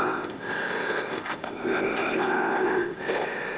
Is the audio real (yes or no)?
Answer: no